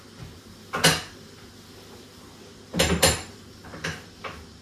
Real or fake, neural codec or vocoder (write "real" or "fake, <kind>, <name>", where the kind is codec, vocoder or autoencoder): real